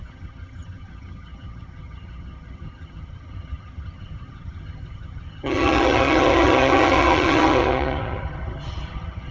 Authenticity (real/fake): fake